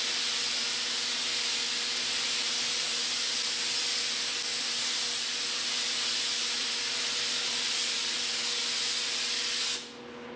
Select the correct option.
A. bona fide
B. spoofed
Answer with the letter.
A